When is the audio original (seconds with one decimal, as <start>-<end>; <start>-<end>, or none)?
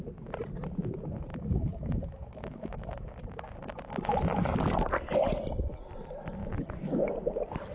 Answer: 0.0-1.3; 3.1-6.4; 7.0-7.7